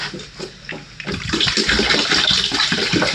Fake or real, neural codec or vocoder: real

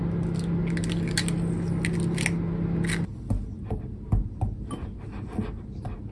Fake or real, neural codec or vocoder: real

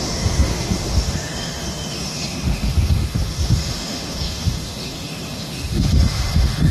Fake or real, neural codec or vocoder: fake, autoencoder, DAC-VAE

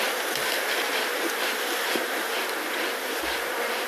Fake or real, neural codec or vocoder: real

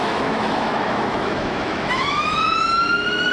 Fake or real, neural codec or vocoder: fake, autoencoder, DAC-VAE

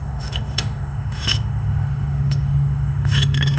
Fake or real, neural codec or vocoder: fake, autoencoder, DAC-VAE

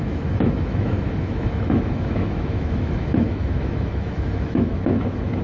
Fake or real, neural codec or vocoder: fake, autoencoder, DAC-VAE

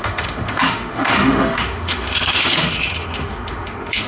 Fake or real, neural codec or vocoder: fake, autoencoder, DAC-VAE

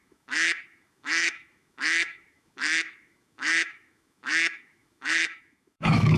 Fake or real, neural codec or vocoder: fake, autoencoder, DAC-VAE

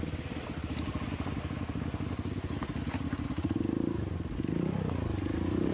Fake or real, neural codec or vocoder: real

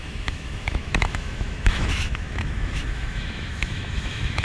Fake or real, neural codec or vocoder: fake, autoencoder, DAC-VAE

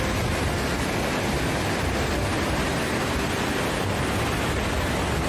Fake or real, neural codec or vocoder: real